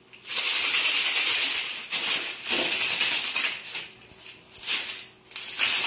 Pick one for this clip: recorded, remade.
recorded